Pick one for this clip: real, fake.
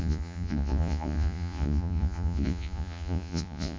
fake